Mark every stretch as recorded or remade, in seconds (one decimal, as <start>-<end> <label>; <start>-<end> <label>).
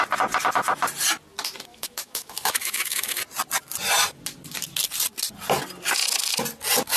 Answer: 0.0-1.7 recorded; 1.7-3.2 remade; 3.2-7.0 recorded